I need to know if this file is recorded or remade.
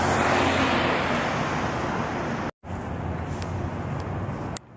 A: recorded